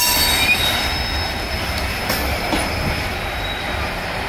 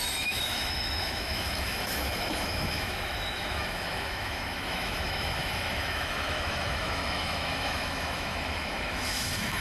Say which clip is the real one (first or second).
first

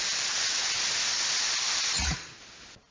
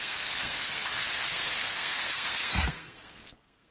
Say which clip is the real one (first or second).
first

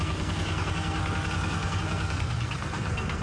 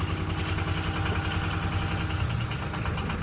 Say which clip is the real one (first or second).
second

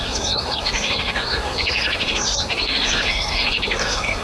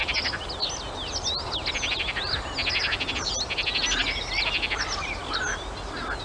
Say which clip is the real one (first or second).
second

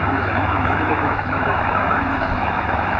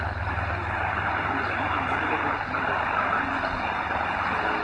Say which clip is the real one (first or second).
second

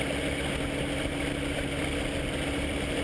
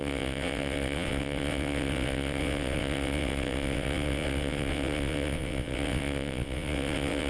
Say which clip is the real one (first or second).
first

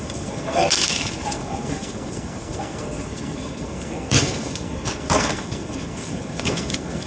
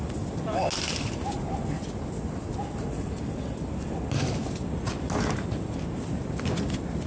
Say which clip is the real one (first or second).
second